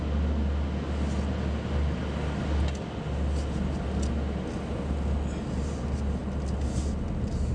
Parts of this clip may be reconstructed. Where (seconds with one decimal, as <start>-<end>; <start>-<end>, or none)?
none